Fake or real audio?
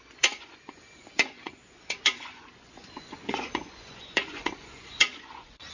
fake